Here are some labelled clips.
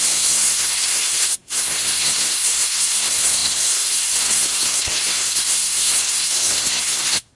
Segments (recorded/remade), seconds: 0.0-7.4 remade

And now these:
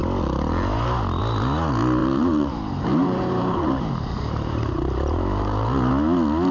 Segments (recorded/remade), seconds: 0.0-2.0 recorded; 2.0-5.9 remade; 5.9-6.5 recorded

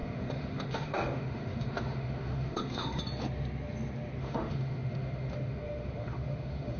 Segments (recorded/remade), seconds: 0.0-3.0 remade; 3.0-4.2 recorded; 4.2-6.8 remade

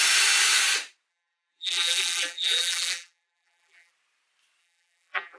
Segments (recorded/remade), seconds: 0.0-1.1 recorded; 1.1-3.9 remade; 3.9-4.6 recorded; 4.6-5.4 remade

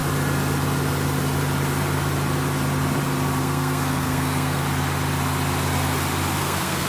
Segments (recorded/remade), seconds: 0.0-3.4 recorded; 3.4-4.6 remade; 4.6-6.4 recorded; 6.4-6.9 remade

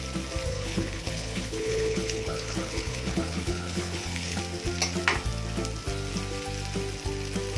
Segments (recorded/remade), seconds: 0.0-0.5 recorded; 0.5-4.4 remade; 4.4-7.6 recorded

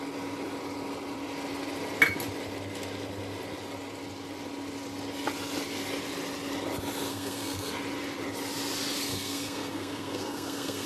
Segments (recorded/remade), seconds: 0.0-7.1 recorded; 7.1-7.7 remade; 7.7-9.1 recorded; 9.1-10.9 remade